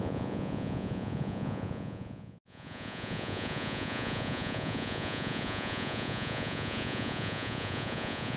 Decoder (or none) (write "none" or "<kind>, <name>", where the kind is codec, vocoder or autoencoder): vocoder, Vocos